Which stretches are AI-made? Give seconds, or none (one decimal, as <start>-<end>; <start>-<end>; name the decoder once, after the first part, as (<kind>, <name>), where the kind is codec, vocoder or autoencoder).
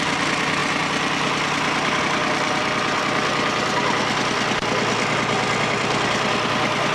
none